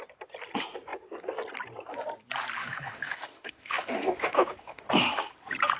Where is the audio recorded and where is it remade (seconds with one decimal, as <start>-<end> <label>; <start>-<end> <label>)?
0.0-2.6 recorded; 2.6-4.9 remade; 4.9-5.8 recorded